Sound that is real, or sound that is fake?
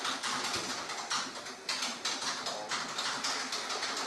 real